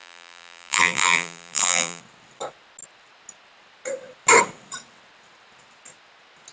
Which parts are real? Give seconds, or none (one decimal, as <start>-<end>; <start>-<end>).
2.0-6.5